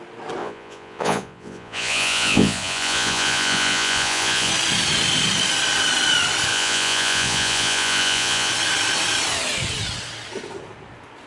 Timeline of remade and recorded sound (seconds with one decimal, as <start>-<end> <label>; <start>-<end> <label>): 0.0-0.4 recorded; 0.4-4.5 remade; 4.5-6.5 recorded; 6.5-8.5 remade; 8.5-11.3 recorded